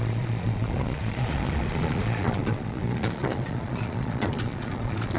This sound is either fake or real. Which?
fake